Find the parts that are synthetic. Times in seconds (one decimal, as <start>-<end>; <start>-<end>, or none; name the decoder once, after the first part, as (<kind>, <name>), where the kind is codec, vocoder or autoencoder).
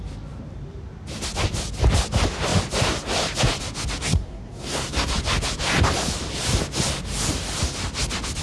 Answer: 4.0-5.1 (codec, SNAC)